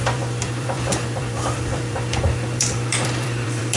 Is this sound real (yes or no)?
no